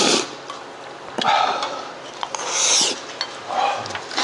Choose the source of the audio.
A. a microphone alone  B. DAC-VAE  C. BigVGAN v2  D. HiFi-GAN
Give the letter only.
A